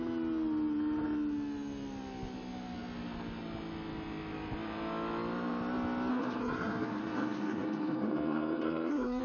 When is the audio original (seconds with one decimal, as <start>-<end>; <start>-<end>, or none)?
0.0-6.1